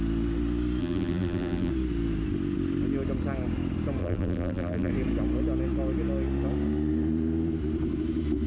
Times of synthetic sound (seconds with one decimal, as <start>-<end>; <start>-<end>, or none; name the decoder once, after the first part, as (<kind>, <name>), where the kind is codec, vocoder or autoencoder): 0.8-1.7 (vocoder, BigVGAN v2); 4.0-4.9